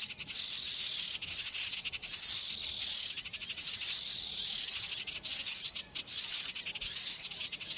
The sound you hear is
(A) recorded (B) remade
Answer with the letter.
A